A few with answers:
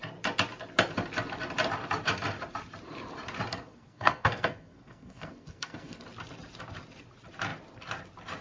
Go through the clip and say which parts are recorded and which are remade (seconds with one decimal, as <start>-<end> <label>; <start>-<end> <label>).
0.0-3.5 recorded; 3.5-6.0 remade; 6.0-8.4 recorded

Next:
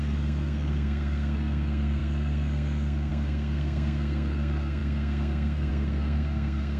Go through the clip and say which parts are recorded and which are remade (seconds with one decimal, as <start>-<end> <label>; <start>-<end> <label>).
0.0-6.8 remade

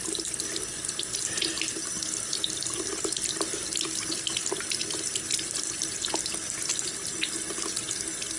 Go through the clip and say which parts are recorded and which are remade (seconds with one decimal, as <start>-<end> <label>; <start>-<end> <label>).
0.0-8.4 recorded

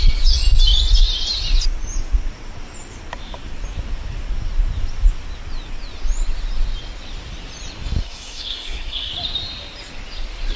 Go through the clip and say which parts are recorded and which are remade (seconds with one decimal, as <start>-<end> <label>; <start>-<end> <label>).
0.0-8.0 recorded; 8.0-9.1 remade; 9.1-10.6 recorded

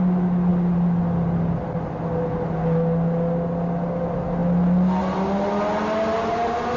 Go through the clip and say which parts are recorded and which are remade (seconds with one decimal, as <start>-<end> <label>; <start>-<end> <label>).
0.0-6.8 recorded

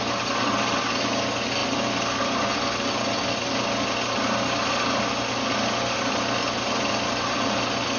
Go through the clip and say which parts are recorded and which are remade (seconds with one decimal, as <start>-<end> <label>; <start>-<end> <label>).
0.0-8.0 recorded